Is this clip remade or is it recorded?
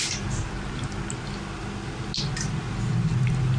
recorded